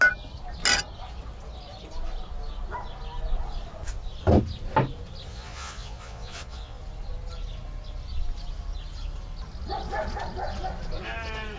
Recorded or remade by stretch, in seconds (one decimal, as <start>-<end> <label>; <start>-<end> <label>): 0.0-5.3 recorded; 5.3-6.8 remade; 6.8-11.6 recorded

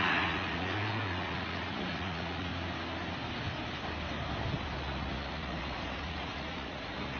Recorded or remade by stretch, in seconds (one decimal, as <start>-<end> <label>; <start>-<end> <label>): 0.0-2.5 remade; 2.5-4.8 recorded; 4.8-7.2 remade

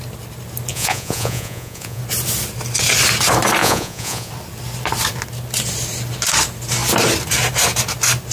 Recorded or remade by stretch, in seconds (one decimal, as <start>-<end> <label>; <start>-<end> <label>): 0.0-0.7 recorded; 0.7-2.0 remade; 2.0-3.6 recorded; 3.6-4.3 remade; 4.3-8.3 recorded

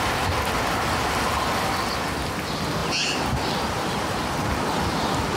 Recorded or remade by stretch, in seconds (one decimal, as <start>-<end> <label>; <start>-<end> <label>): 0.0-5.4 recorded